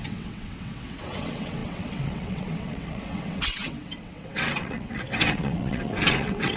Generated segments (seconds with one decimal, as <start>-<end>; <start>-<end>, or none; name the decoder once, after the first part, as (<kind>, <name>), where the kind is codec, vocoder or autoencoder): 0.0-6.6 (vocoder, WaveNeXt)